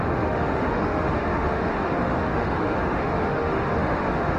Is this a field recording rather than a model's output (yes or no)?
no